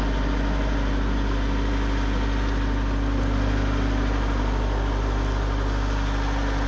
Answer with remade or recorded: recorded